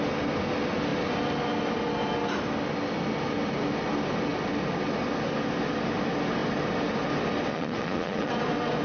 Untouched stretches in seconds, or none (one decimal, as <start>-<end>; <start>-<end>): 0.0-7.5; 8.3-8.8